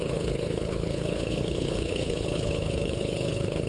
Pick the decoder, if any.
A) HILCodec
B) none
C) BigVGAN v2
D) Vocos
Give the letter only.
A